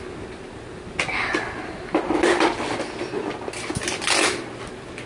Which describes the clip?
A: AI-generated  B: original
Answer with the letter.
B